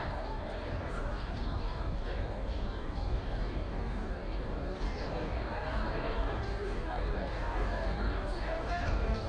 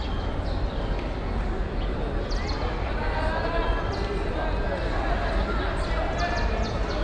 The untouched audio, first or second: second